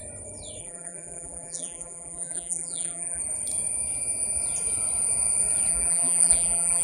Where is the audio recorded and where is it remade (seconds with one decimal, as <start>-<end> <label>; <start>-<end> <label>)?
0.0-0.6 recorded; 0.6-3.2 remade; 3.2-5.7 recorded; 5.7-6.8 remade